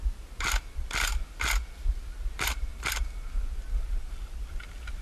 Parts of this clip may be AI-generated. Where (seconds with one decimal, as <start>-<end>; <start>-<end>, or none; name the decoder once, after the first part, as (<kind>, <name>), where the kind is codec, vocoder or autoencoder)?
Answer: none